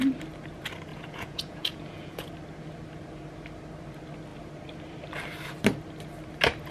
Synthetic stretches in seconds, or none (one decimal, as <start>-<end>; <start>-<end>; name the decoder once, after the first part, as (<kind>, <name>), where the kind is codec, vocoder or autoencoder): 0.9-2.3 (vocoder, Vocos)